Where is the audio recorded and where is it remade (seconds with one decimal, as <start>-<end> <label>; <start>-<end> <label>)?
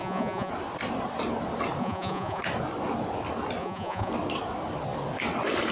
0.0-0.5 remade; 0.5-1.8 recorded; 1.8-2.4 remade; 2.4-3.6 recorded; 3.6-4.1 remade; 4.1-5.7 recorded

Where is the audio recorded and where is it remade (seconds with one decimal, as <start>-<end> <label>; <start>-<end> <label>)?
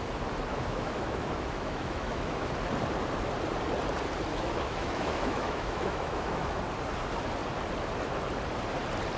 0.0-0.5 recorded; 0.5-2.5 remade; 2.5-4.3 recorded; 4.3-6.6 remade; 6.6-9.2 recorded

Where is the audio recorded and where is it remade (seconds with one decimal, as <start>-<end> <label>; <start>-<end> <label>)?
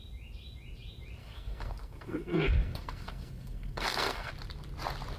0.0-1.2 recorded; 1.2-4.3 remade; 4.3-5.2 recorded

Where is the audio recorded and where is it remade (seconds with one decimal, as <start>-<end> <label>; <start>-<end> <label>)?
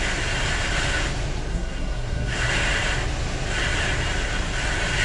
0.0-1.5 recorded; 1.5-2.5 remade; 2.5-5.0 recorded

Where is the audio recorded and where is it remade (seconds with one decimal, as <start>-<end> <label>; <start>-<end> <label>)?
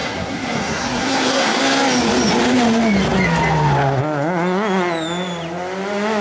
0.0-1.6 remade; 1.6-6.2 recorded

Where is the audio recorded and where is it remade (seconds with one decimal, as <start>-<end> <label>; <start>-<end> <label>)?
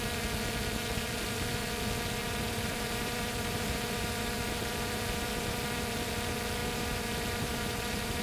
0.0-0.9 recorded; 0.9-1.5 remade; 1.5-2.2 recorded; 2.2-6.1 remade; 6.1-6.6 recorded; 6.6-8.2 remade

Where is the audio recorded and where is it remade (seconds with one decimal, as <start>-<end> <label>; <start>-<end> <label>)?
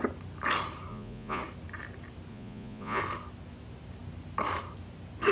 0.0-0.9 recorded; 0.9-1.4 remade; 1.4-2.3 recorded; 2.3-3.0 remade; 3.0-5.3 recorded